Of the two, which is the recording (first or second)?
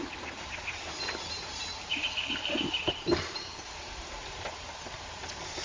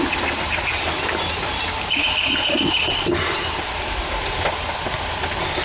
second